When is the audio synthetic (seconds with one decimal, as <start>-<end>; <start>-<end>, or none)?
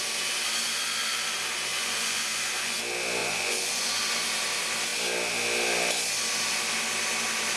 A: 1.7-2.8; 3.2-4.0